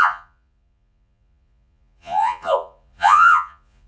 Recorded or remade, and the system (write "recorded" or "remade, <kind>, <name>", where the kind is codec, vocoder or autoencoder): remade, vocoder, Vocos